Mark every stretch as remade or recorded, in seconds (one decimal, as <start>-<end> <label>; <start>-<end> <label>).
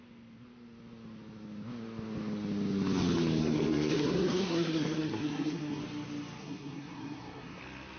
0.0-3.4 recorded; 3.4-5.8 remade; 5.8-6.4 recorded; 6.4-7.6 remade; 7.6-8.0 recorded